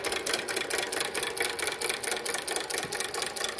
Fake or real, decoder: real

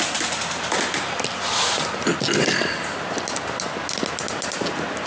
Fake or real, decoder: real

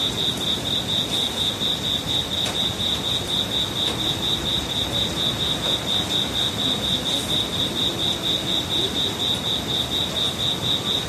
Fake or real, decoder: real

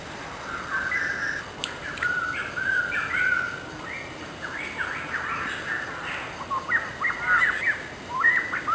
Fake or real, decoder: real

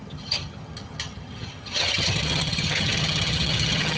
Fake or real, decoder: fake, vocoder, HiFi-GAN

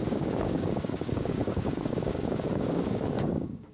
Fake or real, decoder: fake, codec, DAC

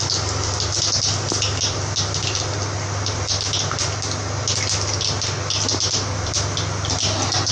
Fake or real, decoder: real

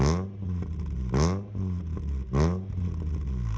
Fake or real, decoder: real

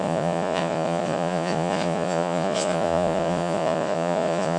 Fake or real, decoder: fake, vocoder, Vocos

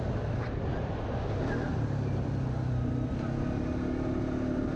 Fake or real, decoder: real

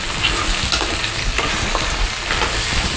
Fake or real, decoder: real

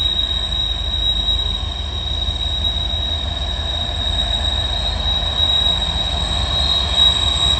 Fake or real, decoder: real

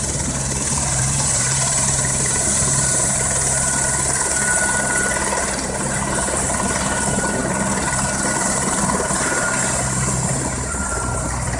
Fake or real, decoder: fake, vocoder, BigVGAN v2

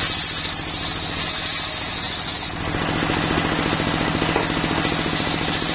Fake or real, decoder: real